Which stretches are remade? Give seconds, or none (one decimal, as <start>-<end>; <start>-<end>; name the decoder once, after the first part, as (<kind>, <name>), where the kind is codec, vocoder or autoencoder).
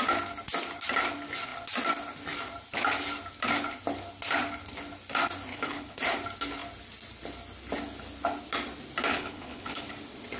5.5-6.0 (codec, HILCodec); 9.1-9.8